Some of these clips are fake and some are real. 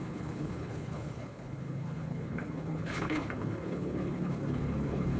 fake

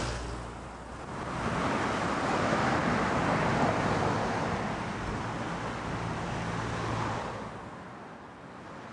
real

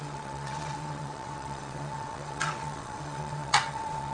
fake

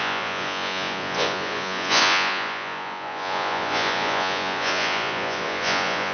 fake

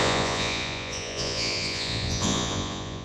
fake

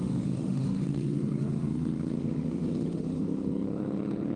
fake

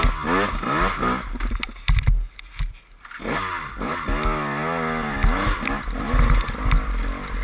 real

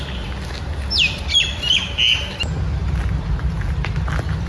real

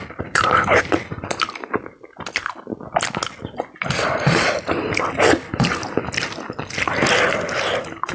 real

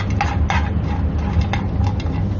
real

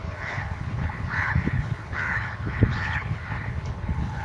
fake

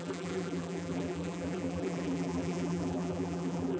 fake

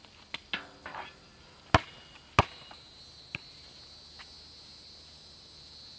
real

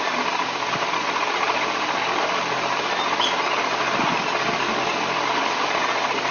real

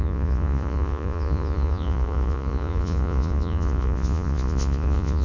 fake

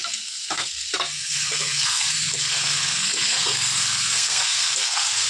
fake